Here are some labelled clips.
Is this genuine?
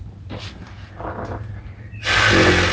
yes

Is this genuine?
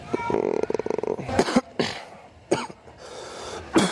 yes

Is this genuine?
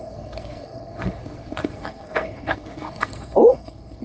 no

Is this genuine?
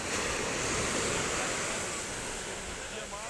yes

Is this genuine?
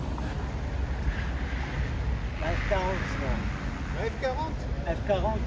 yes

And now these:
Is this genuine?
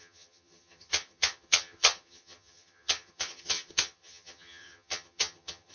no